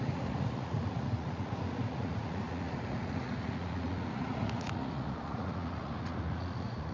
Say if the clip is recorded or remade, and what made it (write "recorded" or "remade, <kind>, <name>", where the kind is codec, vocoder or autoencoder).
remade, vocoder, Vocos